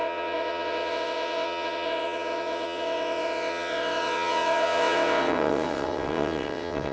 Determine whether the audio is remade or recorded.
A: remade